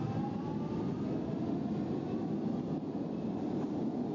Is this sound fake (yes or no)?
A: no